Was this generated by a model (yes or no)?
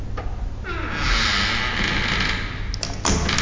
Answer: no